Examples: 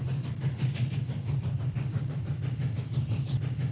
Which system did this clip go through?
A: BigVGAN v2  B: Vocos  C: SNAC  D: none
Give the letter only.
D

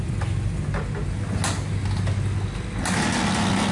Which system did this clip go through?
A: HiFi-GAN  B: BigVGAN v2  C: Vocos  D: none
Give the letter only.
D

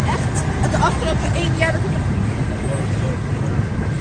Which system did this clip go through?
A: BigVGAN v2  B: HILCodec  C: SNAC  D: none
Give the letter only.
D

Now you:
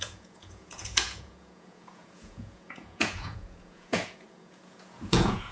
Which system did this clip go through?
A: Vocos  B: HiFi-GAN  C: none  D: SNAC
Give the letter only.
A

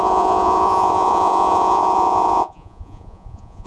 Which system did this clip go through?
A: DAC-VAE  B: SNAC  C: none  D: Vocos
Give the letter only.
D